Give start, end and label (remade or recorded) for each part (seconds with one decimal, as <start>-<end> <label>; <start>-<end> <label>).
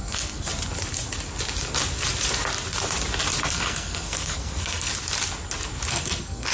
0.0-0.5 remade; 0.5-3.4 recorded; 3.4-4.9 remade; 4.9-5.9 recorded; 5.9-6.5 remade